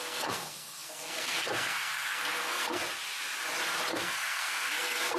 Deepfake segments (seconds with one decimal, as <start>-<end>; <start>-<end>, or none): 0.0-2.8; 3.9-5.2